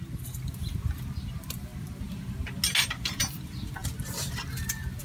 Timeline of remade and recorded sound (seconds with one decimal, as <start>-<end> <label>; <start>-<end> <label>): 0.0-5.0 recorded